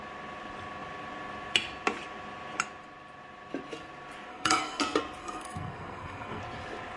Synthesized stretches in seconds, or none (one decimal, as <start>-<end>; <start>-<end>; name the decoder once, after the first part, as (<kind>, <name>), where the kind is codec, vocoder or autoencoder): 4.3-4.8 (codec, SNAC); 5.2-6.4